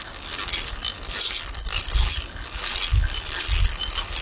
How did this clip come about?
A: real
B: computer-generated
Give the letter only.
A